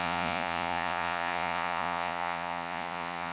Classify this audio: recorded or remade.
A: remade